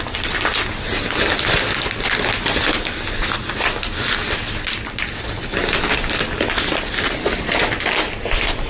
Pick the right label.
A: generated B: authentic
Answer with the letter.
B